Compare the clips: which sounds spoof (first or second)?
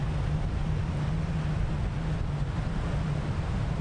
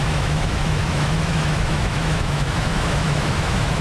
second